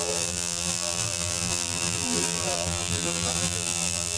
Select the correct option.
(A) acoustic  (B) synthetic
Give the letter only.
B